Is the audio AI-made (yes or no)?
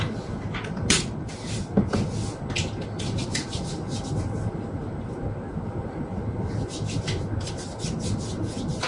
no